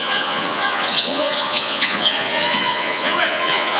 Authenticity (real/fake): fake